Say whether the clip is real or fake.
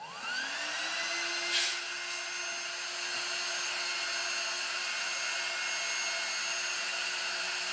real